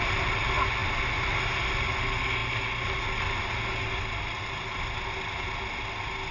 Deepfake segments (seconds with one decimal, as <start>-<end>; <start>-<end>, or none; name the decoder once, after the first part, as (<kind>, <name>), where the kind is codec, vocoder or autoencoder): none